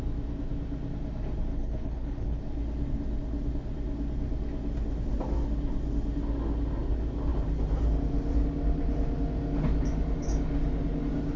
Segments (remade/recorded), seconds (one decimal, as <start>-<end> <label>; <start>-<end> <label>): 0.0-1.5 recorded; 1.5-2.4 remade; 2.4-11.4 recorded